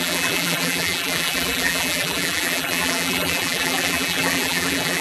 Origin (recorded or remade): remade